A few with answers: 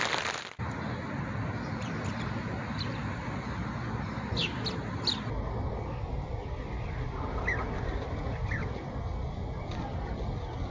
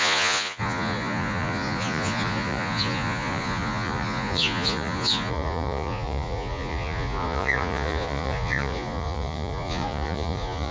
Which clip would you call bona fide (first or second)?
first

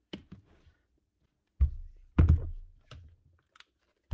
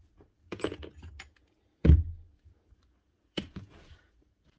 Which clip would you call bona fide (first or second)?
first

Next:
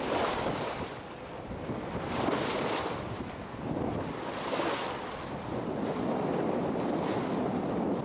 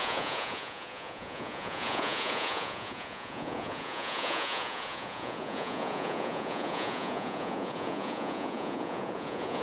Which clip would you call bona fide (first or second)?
first